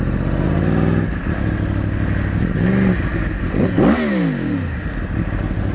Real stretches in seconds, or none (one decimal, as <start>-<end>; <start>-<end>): 0.0-5.7